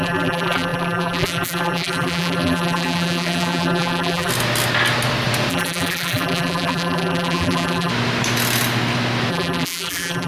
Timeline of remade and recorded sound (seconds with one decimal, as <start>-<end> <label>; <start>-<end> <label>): 0.0-4.3 remade; 4.3-5.5 recorded; 5.5-7.9 remade; 7.9-9.3 recorded; 9.3-10.3 remade